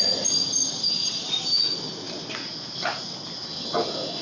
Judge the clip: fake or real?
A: real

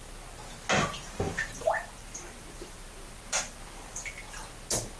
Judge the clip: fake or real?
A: real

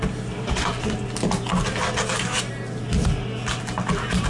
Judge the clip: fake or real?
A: real